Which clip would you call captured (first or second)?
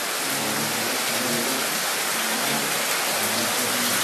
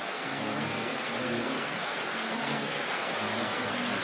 first